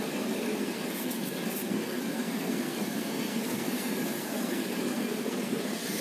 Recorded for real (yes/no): no